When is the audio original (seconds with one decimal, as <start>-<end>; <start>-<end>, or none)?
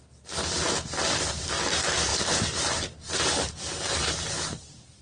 0.0-2.1